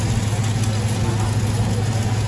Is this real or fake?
real